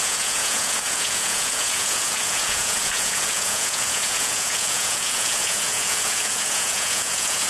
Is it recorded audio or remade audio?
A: remade